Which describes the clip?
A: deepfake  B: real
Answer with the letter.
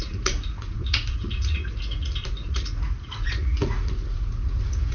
A